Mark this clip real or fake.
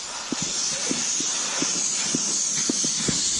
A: real